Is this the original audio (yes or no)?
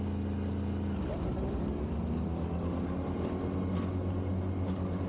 yes